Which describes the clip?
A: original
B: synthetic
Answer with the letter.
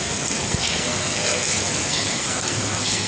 B